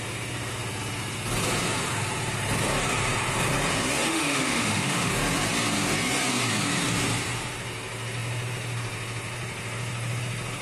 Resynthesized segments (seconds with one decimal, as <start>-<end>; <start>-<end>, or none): 4.1-5.1